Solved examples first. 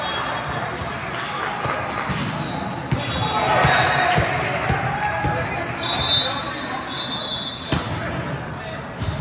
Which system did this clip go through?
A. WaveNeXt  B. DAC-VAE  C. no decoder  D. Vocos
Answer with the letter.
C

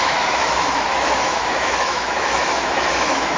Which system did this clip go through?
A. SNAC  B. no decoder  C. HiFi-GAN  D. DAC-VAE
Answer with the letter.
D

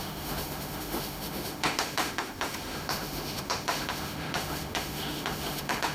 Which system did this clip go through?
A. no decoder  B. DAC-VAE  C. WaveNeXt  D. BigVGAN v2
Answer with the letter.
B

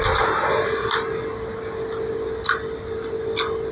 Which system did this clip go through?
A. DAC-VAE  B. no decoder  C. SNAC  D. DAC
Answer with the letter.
B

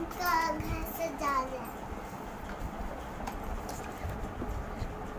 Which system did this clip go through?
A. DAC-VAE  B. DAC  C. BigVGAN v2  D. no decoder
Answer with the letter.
D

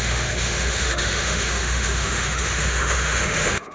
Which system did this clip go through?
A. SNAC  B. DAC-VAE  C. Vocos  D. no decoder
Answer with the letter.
B